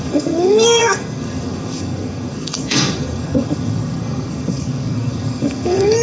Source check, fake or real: fake